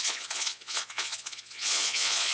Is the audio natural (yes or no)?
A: no